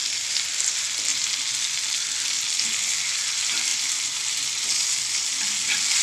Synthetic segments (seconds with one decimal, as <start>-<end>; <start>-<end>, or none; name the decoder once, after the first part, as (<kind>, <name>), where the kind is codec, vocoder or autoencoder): 3.7-4.6 (vocoder, BigVGAN v2)